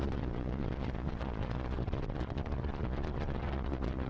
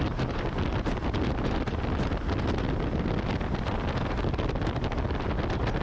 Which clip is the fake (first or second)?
first